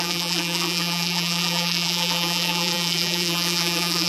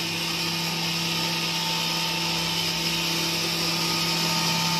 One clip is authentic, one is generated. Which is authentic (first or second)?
second